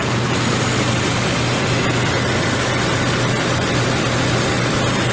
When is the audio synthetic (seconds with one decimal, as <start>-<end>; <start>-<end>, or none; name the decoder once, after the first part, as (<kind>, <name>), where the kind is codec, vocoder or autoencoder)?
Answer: none